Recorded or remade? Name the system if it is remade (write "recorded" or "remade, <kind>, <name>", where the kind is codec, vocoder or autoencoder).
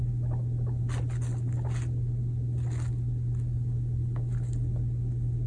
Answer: recorded